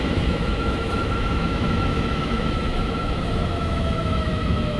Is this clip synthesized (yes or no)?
yes